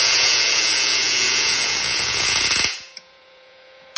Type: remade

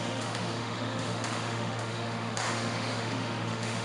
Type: remade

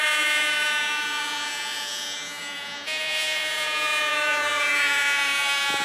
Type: remade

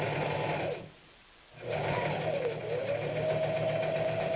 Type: recorded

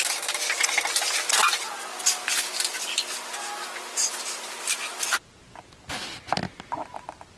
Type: recorded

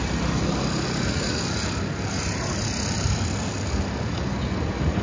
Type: recorded